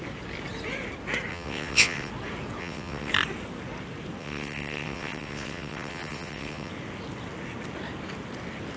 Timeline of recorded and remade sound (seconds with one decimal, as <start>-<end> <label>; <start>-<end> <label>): 0.0-1.3 recorded; 1.3-2.1 remade; 2.1-2.6 recorded; 2.6-3.1 remade; 3.1-4.2 recorded; 4.2-6.7 remade; 6.7-8.8 recorded